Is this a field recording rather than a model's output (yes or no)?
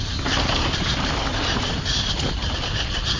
yes